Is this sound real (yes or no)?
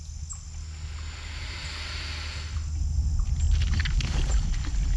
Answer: yes